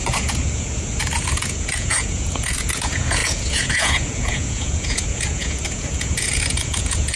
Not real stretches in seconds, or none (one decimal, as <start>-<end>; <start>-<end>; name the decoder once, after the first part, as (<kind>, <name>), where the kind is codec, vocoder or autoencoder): 0.0-7.2 (vocoder, Vocos)